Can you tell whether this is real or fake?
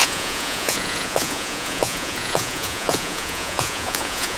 fake